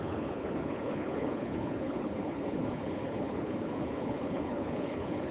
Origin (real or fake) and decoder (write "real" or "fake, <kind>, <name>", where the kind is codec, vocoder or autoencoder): fake, codec, HILCodec